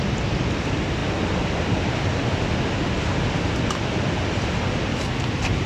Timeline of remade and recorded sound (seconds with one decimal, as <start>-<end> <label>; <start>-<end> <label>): 0.0-5.7 recorded

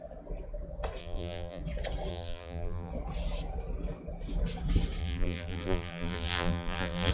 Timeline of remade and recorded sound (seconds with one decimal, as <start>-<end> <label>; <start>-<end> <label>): 0.0-1.0 recorded; 1.0-1.6 remade; 1.6-2.1 recorded; 2.1-2.9 remade; 2.9-5.0 recorded; 5.0-7.1 remade